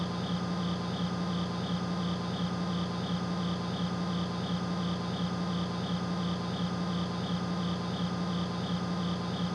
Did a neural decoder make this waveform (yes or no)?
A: no